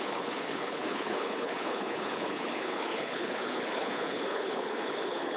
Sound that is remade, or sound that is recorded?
remade